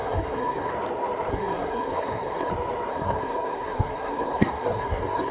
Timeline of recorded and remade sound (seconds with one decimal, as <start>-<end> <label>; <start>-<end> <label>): 0.0-0.7 remade; 0.7-1.3 recorded; 1.3-2.5 remade; 2.5-2.9 recorded; 2.9-5.3 remade